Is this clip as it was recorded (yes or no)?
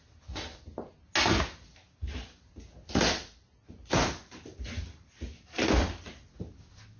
yes